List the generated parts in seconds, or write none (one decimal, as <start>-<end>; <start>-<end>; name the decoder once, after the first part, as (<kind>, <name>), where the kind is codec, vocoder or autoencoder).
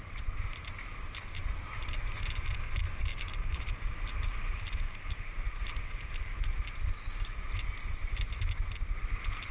3.1-6.5 (vocoder, BigVGAN v2)